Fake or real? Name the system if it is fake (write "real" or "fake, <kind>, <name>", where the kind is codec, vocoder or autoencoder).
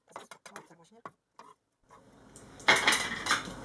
real